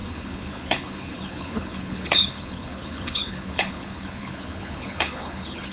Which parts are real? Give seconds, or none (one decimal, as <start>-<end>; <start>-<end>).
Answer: none